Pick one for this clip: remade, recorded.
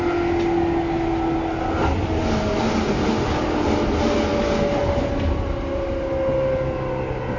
recorded